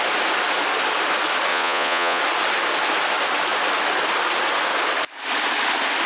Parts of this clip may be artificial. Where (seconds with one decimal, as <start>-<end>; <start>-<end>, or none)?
1.5-2.2